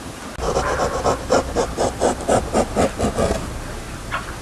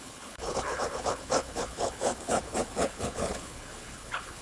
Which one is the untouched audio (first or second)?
first